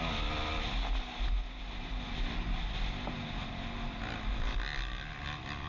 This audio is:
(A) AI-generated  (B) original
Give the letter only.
B